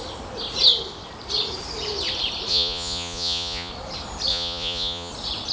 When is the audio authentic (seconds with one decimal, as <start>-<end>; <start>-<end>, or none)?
0.0-2.5; 3.7-4.3; 5.1-5.5

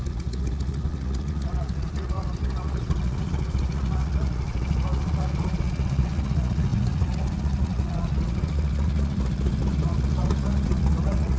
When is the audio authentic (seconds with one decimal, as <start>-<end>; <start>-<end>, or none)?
none

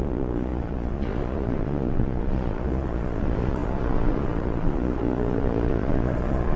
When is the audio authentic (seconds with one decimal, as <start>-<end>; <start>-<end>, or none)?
none

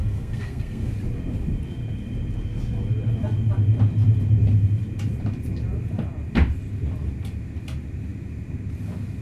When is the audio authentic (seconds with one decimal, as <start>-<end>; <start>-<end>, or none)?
0.9-9.2

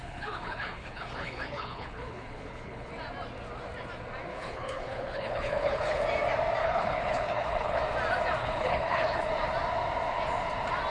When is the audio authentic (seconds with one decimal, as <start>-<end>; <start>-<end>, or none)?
2.9-4.3; 6.0-6.6; 7.8-8.4; 9.3-10.9